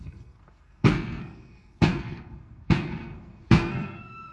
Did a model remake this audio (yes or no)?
yes